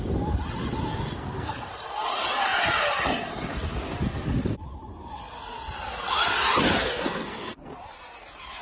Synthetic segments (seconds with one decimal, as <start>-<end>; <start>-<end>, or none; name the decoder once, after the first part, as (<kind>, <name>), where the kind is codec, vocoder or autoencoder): 0.9-1.7 (codec, SNAC); 6.8-7.7